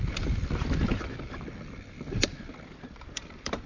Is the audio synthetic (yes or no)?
yes